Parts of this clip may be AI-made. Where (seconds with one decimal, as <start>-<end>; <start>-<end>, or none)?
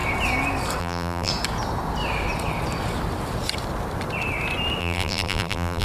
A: 0.8-1.3; 4.8-5.8